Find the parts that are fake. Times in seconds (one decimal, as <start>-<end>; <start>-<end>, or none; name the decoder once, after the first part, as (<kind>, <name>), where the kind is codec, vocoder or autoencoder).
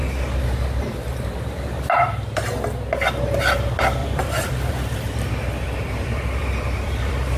4.0-7.4 (vocoder, BigVGAN v2)